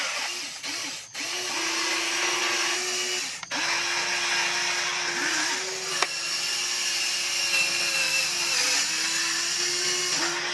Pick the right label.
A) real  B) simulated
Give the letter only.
A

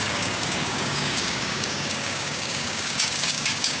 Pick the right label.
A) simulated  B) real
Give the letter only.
A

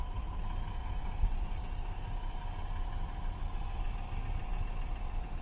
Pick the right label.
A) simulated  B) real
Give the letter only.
B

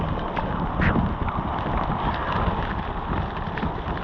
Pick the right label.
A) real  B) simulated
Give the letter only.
A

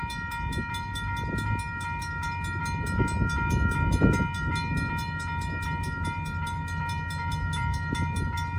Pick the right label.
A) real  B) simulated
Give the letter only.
A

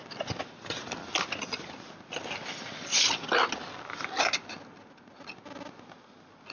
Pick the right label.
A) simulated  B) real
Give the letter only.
B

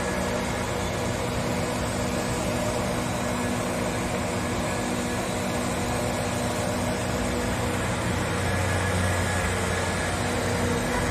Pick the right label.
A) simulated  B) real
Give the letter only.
B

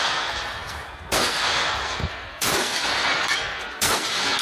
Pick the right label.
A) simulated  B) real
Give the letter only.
A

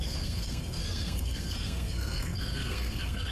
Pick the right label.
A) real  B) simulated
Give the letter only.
B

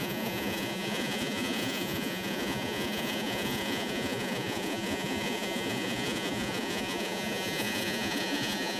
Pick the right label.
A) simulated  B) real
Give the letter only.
A